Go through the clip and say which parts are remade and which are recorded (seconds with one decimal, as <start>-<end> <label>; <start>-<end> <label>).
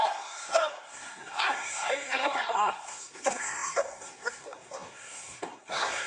0.0-6.1 remade